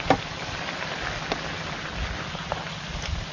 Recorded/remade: recorded